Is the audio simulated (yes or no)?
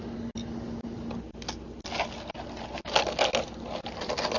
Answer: no